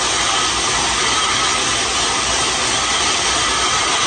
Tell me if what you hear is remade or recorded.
recorded